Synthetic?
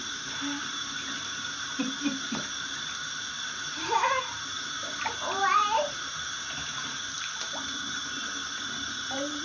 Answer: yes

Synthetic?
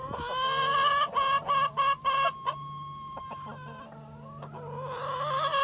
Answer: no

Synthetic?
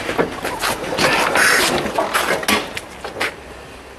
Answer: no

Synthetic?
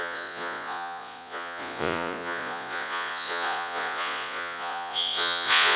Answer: yes